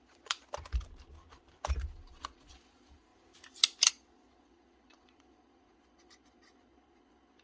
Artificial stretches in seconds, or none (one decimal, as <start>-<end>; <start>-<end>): 0.0-0.5; 2.1-3.1; 3.9-7.4